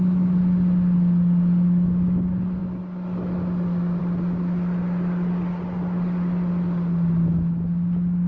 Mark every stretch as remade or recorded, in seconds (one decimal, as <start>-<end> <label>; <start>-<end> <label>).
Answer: 0.0-8.3 recorded